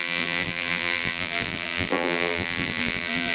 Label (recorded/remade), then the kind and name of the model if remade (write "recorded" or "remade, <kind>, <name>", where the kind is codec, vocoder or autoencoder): remade, vocoder, BigVGAN v2